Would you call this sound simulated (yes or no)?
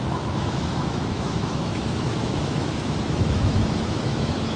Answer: yes